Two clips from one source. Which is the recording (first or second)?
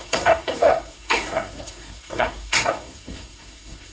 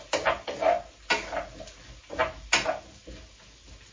second